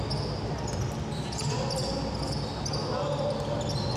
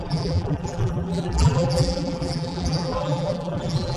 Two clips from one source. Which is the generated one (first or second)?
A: second